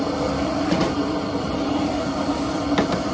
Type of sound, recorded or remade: recorded